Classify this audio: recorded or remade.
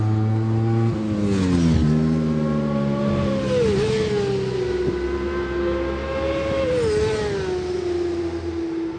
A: recorded